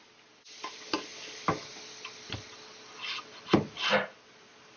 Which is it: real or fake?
real